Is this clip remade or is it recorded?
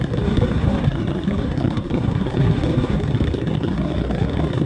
remade